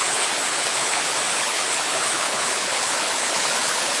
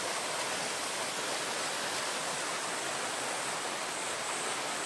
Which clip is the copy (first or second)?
first